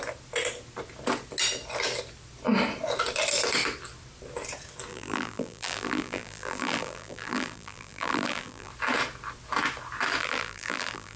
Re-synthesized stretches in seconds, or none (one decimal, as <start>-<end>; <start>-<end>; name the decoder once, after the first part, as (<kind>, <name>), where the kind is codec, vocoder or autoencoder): 4.9-8.7 (vocoder, BigVGAN v2); 10.2-11.2